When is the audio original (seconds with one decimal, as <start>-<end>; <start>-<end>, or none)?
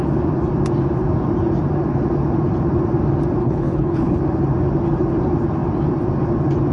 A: 0.0-3.4; 4.2-6.7